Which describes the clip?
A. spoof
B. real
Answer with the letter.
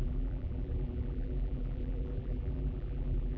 A